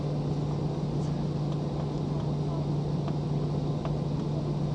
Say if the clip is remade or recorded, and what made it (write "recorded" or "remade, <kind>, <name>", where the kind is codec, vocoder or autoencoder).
recorded